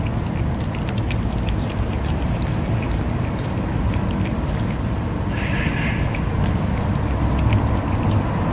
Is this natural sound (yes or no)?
yes